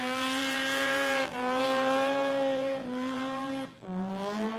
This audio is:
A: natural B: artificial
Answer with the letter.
B